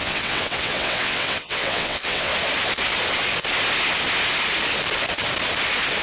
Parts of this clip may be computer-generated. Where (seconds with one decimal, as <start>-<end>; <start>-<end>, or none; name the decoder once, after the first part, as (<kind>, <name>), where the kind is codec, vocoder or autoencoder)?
0.0-2.3 (vocoder, WaveNeXt)